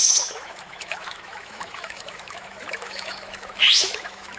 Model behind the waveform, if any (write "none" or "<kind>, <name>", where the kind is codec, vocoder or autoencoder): autoencoder, DAC-VAE